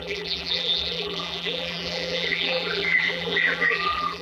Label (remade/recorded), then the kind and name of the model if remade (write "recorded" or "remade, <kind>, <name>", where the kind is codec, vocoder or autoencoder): remade, vocoder, BigVGAN v2